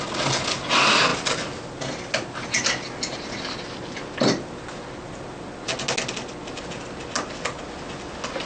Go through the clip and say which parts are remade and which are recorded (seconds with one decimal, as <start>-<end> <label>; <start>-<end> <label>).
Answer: 0.0-8.5 recorded